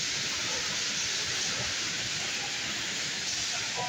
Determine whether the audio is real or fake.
real